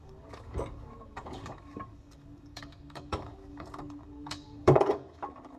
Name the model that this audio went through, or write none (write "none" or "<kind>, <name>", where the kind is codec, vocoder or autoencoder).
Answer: codec, DAC